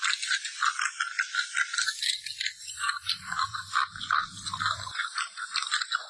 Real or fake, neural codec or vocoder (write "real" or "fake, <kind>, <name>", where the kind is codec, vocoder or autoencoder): real